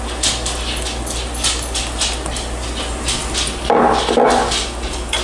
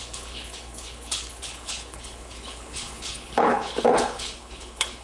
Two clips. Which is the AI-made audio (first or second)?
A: second